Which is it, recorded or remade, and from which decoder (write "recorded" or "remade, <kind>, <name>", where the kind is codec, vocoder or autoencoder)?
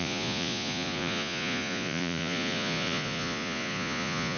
remade, vocoder, Vocos